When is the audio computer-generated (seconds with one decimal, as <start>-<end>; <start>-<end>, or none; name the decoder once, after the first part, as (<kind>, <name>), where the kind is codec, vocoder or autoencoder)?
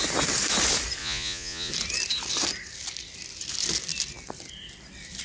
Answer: 1.0-1.7 (vocoder, Vocos)